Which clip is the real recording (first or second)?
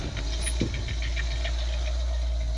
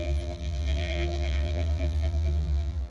first